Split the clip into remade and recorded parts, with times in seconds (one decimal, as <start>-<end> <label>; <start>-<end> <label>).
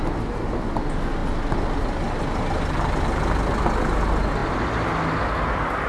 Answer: 0.0-5.9 recorded